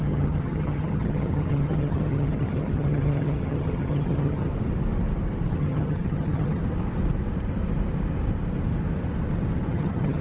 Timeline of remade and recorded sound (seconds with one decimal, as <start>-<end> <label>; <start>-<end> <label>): 0.0-4.5 remade; 4.5-5.5 recorded; 5.5-6.6 remade; 6.6-9.7 recorded; 9.7-10.2 remade